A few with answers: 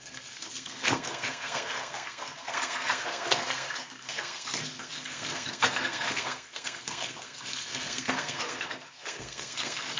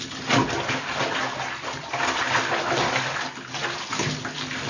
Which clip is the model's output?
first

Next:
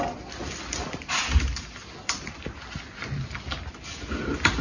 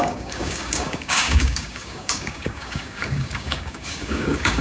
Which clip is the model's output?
second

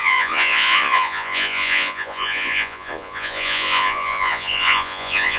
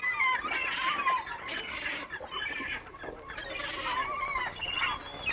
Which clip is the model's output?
first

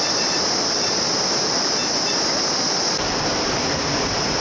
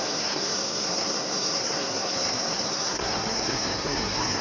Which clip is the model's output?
second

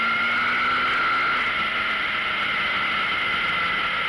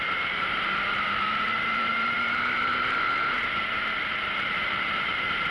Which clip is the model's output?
second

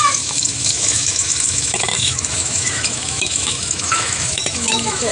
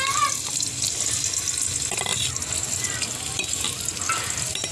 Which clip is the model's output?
first